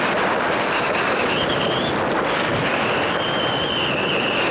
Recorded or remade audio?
recorded